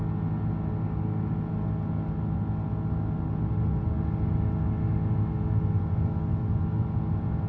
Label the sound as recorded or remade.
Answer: recorded